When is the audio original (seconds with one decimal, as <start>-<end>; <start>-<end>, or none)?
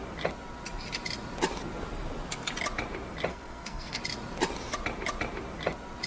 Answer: 0.0-3.3; 4.0-6.1